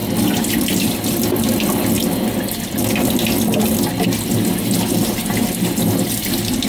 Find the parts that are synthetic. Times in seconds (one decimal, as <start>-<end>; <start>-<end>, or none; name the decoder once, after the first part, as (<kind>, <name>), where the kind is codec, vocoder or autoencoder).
none